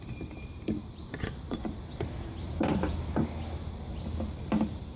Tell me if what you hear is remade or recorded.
recorded